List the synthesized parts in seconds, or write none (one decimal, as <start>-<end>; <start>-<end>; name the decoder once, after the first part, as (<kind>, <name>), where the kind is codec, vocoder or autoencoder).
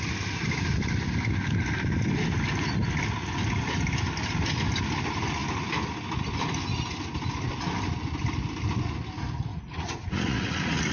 9.5-10.9 (vocoder, Vocos)